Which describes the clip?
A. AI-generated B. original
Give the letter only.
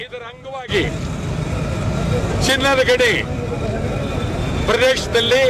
B